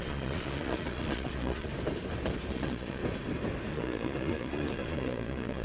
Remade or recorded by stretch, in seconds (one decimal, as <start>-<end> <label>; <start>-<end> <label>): 0.0-1.7 remade; 1.7-2.5 recorded; 2.5-3.0 remade; 3.0-3.7 recorded; 3.7-5.6 remade